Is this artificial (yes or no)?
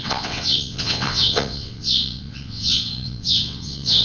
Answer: yes